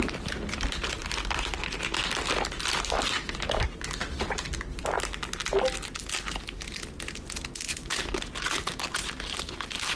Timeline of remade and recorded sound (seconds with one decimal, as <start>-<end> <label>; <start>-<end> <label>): 0.0-10.0 recorded